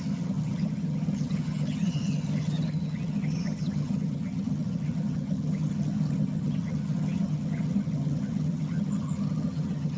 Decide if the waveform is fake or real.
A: fake